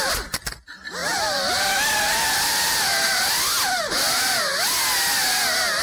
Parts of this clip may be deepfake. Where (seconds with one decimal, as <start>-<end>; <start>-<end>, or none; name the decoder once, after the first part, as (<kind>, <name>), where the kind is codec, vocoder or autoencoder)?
1.0-3.3 (vocoder, BigVGAN v2)